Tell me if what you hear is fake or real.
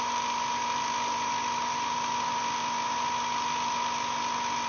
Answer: real